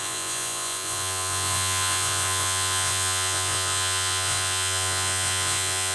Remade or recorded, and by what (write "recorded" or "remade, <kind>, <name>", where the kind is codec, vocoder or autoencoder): remade, vocoder, Vocos